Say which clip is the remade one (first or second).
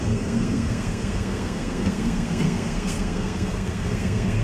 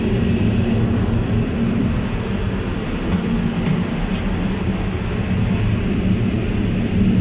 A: first